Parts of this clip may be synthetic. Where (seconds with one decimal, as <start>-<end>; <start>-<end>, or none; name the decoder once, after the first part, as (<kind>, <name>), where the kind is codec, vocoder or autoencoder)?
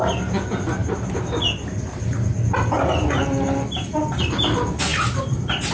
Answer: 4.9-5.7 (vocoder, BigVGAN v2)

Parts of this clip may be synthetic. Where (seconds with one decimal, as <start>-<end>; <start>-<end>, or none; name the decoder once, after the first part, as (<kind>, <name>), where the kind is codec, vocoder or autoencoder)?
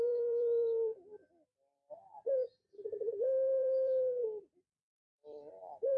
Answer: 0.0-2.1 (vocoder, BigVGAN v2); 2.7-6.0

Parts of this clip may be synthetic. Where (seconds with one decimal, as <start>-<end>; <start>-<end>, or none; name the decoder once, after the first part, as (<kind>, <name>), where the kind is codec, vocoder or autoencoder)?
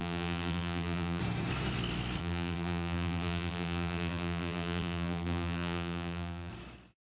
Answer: 0.0-1.2 (vocoder, BigVGAN v2); 2.2-6.5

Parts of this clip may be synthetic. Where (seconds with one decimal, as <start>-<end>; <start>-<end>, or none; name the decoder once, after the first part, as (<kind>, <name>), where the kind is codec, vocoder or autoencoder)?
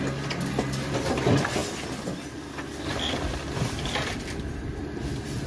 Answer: none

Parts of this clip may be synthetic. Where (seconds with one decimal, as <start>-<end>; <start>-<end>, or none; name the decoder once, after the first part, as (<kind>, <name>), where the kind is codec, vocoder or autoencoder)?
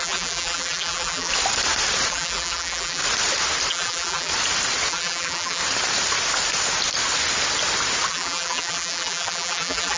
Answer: 0.0-1.3 (vocoder, BigVGAN v2); 2.1-3.0; 3.7-4.3; 4.9-5.6; 8.1-10.0